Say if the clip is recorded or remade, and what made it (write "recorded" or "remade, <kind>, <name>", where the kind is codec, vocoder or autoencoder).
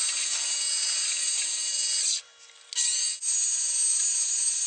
recorded